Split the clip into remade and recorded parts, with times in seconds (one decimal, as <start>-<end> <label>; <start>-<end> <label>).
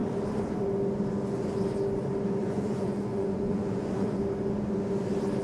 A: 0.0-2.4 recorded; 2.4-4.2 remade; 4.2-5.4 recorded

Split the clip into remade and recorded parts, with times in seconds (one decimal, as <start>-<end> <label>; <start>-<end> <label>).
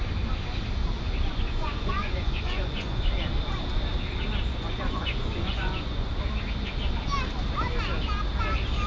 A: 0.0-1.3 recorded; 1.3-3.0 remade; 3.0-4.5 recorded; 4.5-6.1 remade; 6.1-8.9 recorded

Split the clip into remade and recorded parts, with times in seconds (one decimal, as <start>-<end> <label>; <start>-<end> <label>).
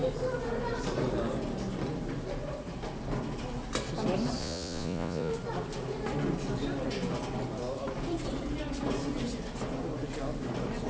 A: 0.0-4.4 recorded; 4.4-5.3 remade; 5.3-10.9 recorded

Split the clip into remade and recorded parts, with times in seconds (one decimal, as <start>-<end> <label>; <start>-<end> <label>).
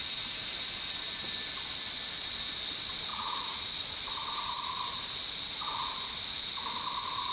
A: 0.0-3.1 recorded; 3.1-3.9 remade; 3.9-7.3 recorded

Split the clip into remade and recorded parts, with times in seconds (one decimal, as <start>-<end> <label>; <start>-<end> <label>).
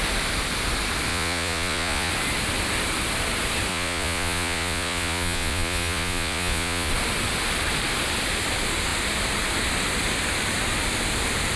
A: 0.0-1.1 recorded; 1.1-2.1 remade; 2.1-3.7 recorded; 3.7-6.9 remade; 6.9-11.6 recorded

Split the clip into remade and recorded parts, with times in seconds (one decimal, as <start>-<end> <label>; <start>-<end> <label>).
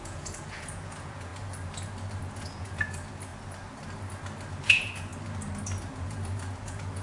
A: 0.0-1.3 remade; 1.3-2.2 recorded; 2.2-3.3 remade; 3.3-4.5 recorded; 4.5-5.1 remade; 5.1-5.8 recorded; 5.8-7.0 remade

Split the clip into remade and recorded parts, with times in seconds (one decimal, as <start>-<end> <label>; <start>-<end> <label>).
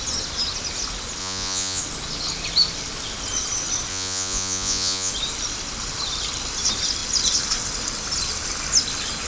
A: 0.0-1.2 recorded; 1.2-1.8 remade; 1.8-3.9 recorded; 3.9-5.1 remade; 5.1-9.3 recorded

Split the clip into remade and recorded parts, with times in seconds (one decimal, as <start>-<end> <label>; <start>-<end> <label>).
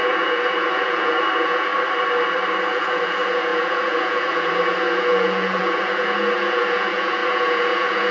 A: 0.0-1.7 remade; 1.7-2.6 recorded; 2.6-8.1 remade